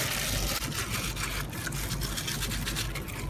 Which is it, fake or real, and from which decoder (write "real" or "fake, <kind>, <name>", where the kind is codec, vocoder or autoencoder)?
real